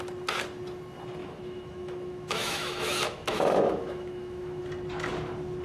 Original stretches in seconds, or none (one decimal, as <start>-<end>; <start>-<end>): 0.0-1.2; 4.6-5.6